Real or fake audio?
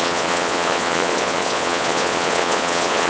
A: fake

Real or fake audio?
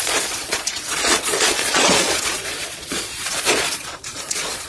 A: fake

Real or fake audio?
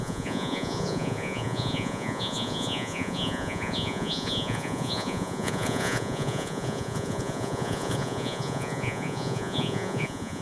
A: fake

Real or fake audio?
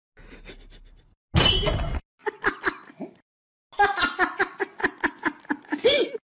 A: real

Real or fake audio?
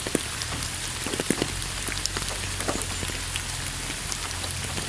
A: real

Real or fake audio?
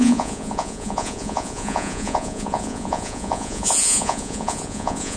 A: fake